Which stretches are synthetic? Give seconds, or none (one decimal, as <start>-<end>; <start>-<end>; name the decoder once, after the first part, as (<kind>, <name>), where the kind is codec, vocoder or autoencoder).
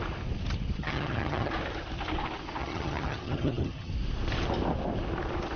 0.8-1.5 (vocoder, HiFi-GAN); 2.6-3.9